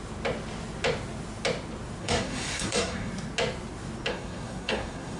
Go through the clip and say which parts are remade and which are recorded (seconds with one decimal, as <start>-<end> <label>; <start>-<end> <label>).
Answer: 0.0-2.0 recorded; 2.0-3.1 remade; 3.1-4.1 recorded; 4.1-5.2 remade